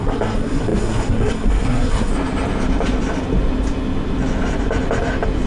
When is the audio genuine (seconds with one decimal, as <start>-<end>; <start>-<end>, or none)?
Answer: 2.1-5.5